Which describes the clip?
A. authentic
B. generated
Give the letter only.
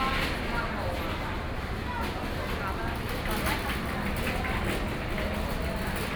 A